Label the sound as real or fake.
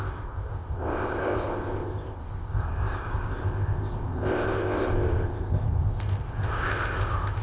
fake